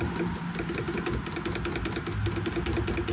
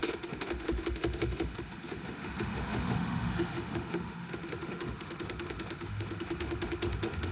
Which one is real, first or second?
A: first